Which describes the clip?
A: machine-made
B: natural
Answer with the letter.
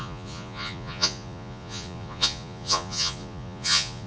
A